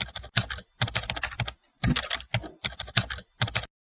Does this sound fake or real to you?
real